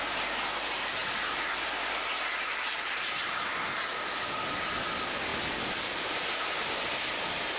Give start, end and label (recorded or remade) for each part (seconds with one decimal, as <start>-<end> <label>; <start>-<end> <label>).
0.0-7.6 recorded